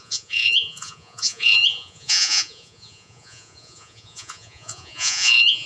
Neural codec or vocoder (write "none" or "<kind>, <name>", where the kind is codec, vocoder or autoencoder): vocoder, Vocos